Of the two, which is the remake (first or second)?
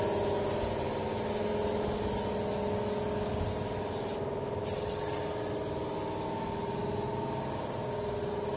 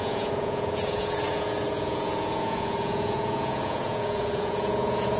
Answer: second